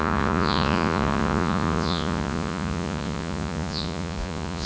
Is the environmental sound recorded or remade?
remade